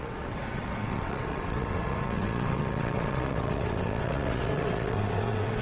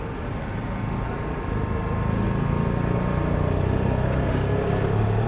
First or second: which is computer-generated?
first